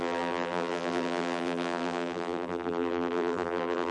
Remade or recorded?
remade